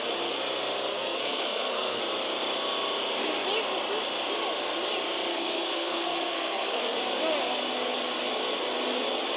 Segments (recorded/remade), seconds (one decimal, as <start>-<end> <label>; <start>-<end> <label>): 0.0-0.9 recorded; 0.9-2.0 remade; 2.0-5.3 recorded; 5.3-6.8 remade; 6.8-9.4 recorded